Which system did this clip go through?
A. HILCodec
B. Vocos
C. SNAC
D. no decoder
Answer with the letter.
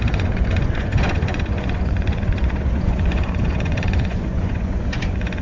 B